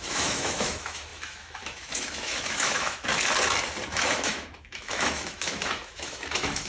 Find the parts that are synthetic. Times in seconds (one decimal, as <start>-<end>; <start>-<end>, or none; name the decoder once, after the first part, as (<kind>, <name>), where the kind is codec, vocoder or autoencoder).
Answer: 0.0-3.1 (autoencoder, DAC-VAE); 3.9-6.7

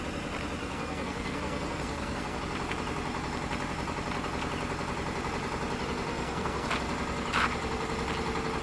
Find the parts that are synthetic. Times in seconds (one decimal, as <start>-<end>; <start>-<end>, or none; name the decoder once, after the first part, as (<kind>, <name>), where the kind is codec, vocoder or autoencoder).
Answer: 0.6-2.4 (codec, SNAC); 6.1-6.7

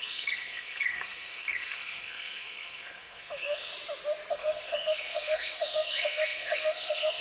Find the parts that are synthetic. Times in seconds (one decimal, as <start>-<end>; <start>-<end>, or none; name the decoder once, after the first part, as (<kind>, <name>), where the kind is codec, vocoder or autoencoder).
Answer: 0.0-3.7 (codec, SNAC); 4.3-7.2

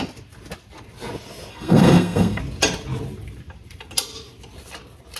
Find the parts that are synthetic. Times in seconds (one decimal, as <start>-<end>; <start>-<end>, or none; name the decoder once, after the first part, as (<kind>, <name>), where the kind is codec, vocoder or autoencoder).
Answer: 1.5-2.4 (codec, SNAC)